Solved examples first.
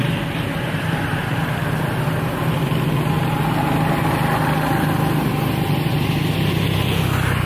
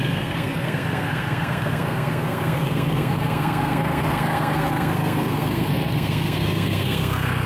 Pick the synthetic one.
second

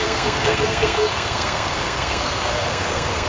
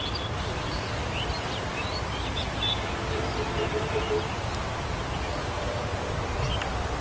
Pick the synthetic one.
first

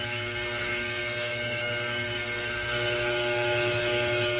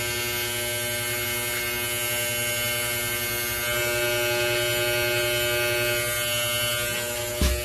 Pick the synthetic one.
first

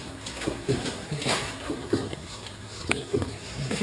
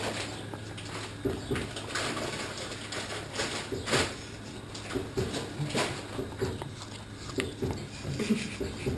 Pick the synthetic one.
first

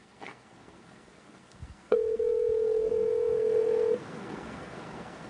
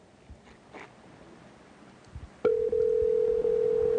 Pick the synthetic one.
first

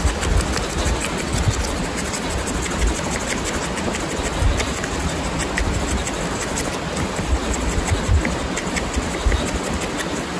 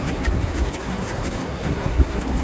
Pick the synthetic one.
second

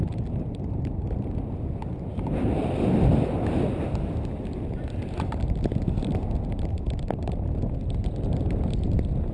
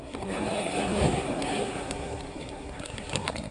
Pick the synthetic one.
second